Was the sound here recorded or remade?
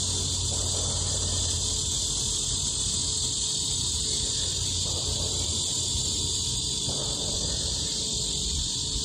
recorded